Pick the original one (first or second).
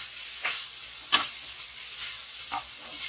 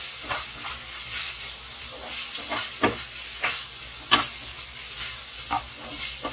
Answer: second